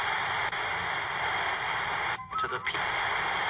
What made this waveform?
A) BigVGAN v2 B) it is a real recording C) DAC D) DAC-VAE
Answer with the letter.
B